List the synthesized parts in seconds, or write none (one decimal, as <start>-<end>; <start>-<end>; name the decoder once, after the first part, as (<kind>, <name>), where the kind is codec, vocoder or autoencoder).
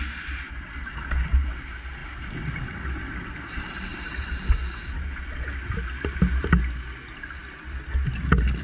none